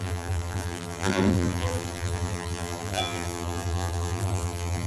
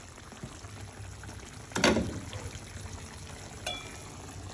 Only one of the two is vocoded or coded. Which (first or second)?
first